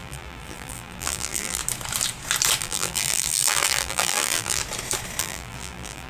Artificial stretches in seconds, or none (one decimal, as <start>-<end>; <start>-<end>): 0.0-1.6; 2.6-4.6; 5.2-6.1